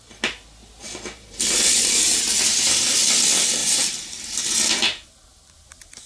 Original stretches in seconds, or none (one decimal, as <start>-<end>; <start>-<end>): 0.0-0.6; 2.9-3.6; 4.2-6.1

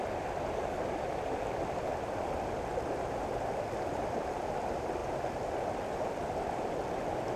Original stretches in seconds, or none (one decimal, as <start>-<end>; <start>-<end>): 0.0-7.4

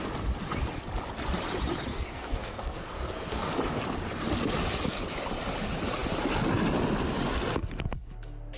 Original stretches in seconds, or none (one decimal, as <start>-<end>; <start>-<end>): 0.0-1.9; 3.5-8.6

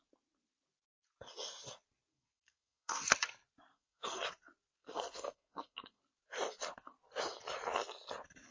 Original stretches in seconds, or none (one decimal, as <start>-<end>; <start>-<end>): 0.0-2.1; 3.1-3.7; 4.2-4.8; 6.0-8.5

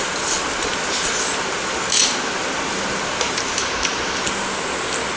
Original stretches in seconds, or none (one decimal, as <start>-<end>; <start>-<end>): 0.0-5.2

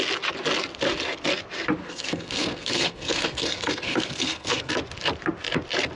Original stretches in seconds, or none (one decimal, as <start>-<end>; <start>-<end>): 0.0-1.8; 4.7-6.0

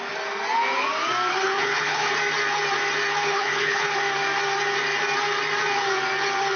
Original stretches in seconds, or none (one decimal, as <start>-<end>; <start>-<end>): 0.0-1.3; 2.1-3.2; 4.0-6.6